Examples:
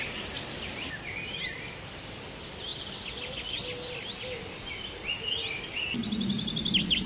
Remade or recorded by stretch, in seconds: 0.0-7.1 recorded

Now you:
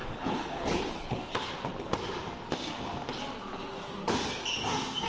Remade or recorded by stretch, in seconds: 0.0-1.2 remade; 1.2-5.1 recorded

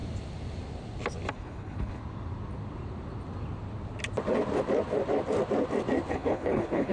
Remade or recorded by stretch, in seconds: 0.0-1.3 recorded; 1.3-2.0 remade; 2.0-6.1 recorded; 6.1-6.9 remade